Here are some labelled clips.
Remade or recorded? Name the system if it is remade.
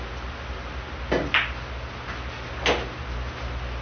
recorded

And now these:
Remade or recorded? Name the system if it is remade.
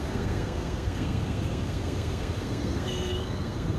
remade, codec, SNAC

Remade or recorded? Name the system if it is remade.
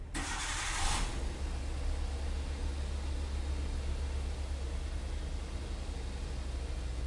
recorded